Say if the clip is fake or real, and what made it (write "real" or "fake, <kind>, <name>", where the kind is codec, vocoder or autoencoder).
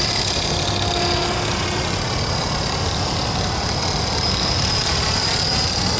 real